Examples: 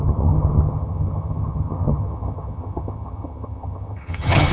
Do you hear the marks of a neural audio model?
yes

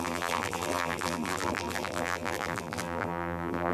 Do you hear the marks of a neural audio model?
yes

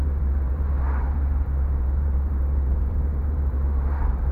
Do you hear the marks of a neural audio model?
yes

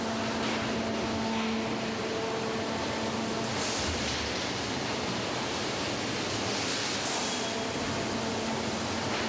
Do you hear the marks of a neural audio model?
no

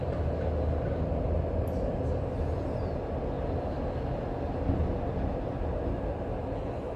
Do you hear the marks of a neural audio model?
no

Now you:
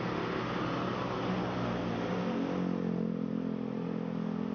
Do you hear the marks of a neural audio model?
no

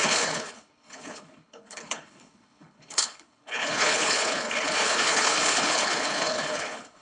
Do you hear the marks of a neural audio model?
yes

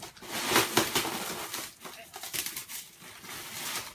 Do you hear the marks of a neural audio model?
no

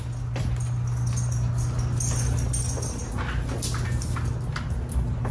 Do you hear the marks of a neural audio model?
no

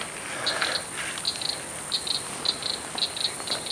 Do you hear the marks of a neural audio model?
no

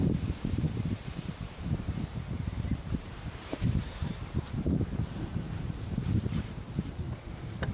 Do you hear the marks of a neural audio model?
yes